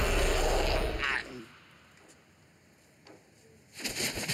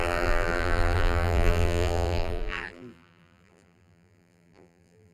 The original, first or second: first